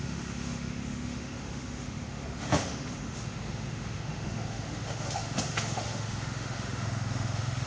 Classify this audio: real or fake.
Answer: fake